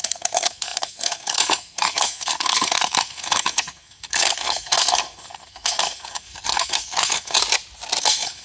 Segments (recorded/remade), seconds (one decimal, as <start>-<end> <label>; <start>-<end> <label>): 0.0-7.4 remade; 7.4-8.0 recorded; 8.0-8.4 remade